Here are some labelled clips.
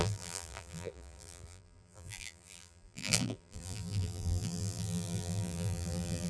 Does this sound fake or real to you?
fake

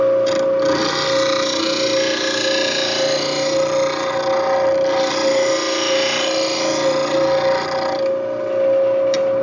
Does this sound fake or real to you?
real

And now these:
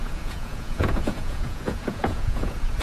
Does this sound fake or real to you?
fake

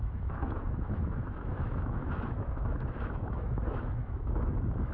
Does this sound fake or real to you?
fake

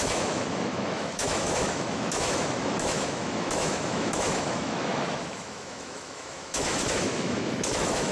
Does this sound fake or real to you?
fake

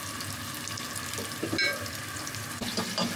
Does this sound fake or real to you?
real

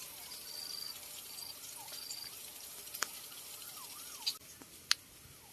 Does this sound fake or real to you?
real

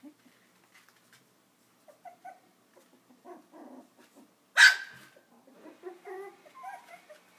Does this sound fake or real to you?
real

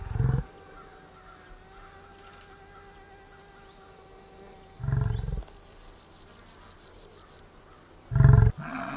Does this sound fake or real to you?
real